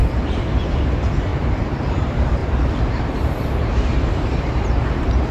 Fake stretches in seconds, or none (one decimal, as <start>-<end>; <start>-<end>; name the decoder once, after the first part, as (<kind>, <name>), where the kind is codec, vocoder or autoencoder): 0.0-5.3 (vocoder, BigVGAN v2)